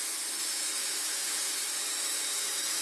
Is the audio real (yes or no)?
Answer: no